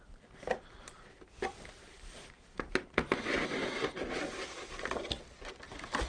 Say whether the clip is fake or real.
real